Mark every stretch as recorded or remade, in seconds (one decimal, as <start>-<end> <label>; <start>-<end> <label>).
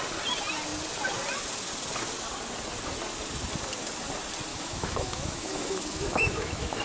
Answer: 0.0-4.5 recorded; 4.5-6.8 remade